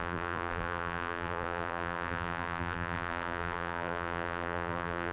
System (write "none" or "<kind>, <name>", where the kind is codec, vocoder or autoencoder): vocoder, BigVGAN v2